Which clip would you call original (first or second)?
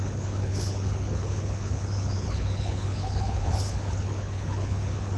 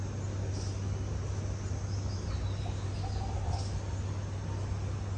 second